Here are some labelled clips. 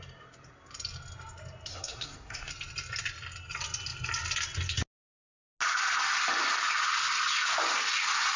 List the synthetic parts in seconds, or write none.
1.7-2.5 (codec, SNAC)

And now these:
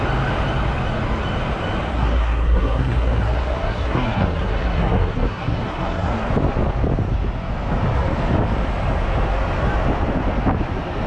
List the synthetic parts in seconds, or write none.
1.9-6.3 (codec, SNAC)

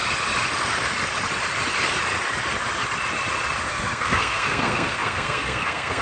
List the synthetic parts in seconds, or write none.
3.6-6.0 (codec, SNAC)

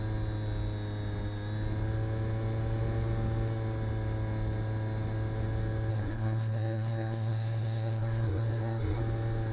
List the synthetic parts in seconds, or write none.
5.9-9.0 (codec, SNAC)

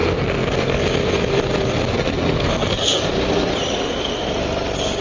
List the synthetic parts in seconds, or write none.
0.0-0.8 (codec, SNAC); 1.9-3.1